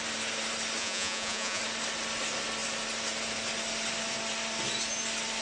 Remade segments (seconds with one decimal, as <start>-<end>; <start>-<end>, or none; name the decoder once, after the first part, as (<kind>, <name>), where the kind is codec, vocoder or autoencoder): 0.8-1.6 (vocoder, Vocos)